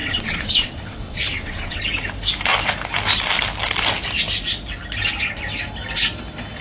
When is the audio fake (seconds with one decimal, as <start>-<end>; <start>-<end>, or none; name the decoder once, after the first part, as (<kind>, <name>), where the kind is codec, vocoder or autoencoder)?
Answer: 0.0-1.8 (vocoder, WaveNeXt)